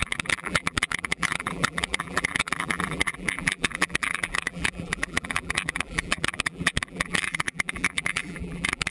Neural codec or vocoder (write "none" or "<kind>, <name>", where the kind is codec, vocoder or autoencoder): vocoder, BigVGAN v2